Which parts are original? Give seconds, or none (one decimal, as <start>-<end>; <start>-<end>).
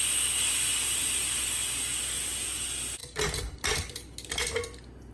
0.0-5.1